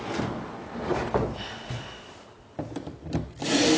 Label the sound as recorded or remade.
recorded